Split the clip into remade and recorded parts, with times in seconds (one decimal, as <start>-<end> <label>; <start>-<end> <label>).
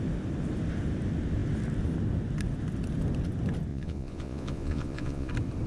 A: 0.0-3.7 recorded; 3.7-5.3 remade; 5.3-5.7 recorded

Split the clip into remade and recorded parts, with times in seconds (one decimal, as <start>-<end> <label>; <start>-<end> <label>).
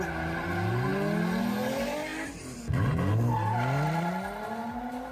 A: 0.0-5.1 recorded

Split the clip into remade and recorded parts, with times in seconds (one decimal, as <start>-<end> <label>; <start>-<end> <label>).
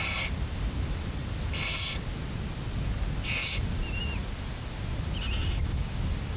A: 0.0-2.2 remade; 2.2-3.4 recorded; 3.4-4.8 remade; 4.8-5.4 recorded; 5.4-6.4 remade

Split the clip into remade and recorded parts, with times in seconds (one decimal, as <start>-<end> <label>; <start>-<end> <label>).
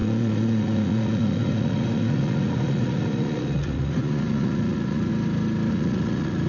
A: 0.0-5.1 remade; 5.1-5.7 recorded; 5.7-6.5 remade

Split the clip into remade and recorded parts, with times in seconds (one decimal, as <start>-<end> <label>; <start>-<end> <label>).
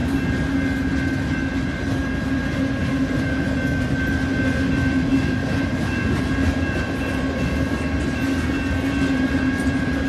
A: 0.0-2.8 recorded; 2.8-3.4 remade; 3.4-5.1 recorded; 5.1-6.3 remade; 6.3-10.1 recorded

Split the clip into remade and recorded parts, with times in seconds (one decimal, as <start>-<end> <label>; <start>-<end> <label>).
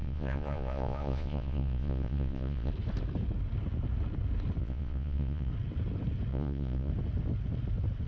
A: 0.0-2.7 remade; 2.7-4.6 recorded; 4.6-5.5 remade; 5.5-6.3 recorded; 6.3-6.9 remade; 6.9-8.1 recorded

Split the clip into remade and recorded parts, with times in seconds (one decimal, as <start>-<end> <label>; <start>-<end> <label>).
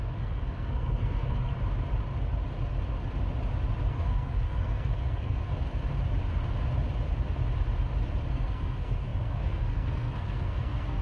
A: 0.0-1.5 remade; 1.5-3.9 recorded; 3.9-5.5 remade; 5.5-8.3 recorded; 8.3-11.0 remade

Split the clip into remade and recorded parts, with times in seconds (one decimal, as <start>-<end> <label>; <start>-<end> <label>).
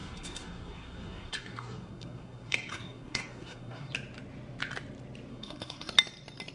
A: 0.0-3.9 remade; 3.9-5.3 recorded; 5.3-5.9 remade; 5.9-6.5 recorded